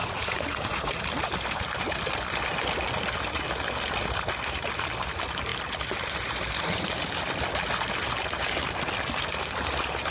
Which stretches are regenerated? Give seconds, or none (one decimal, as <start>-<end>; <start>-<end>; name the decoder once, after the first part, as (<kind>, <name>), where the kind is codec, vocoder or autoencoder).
0.0-1.0 (vocoder, Vocos)